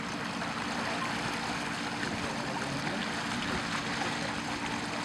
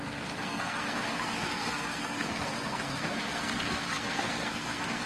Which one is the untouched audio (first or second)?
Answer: first